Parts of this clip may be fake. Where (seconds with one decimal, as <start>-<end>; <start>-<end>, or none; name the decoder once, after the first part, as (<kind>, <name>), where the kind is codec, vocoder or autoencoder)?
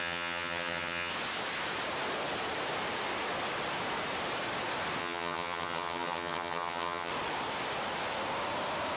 0.0-1.1 (vocoder, HiFi-GAN); 5.0-7.1